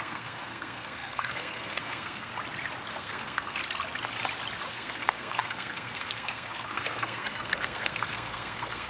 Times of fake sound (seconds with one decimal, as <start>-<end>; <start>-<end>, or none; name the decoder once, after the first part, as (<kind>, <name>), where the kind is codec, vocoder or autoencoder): 0.0-2.3 (codec, SNAC); 2.9-3.6; 4.7-8.9